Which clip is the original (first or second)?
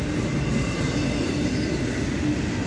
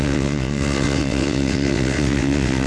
first